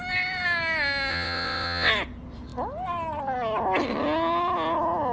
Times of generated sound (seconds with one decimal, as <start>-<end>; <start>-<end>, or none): 1.1-1.9